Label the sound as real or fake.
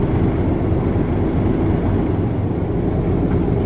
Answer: real